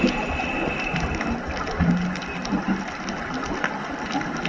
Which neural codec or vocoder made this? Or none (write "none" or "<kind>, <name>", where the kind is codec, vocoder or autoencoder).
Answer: none